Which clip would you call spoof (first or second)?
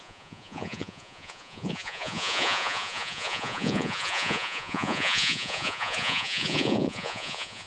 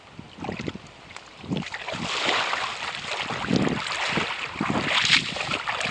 first